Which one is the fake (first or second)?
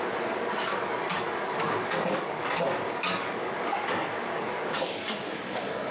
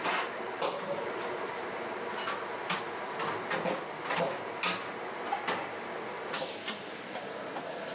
first